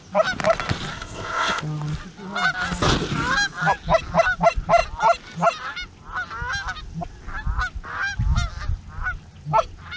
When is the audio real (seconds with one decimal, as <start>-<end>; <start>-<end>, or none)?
0.0-0.9; 1.6-10.0